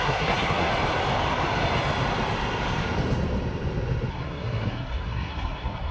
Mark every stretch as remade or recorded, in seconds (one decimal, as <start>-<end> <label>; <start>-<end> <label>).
0.0-0.7 remade; 0.7-4.1 recorded; 4.1-5.9 remade